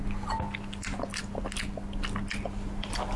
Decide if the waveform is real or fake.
real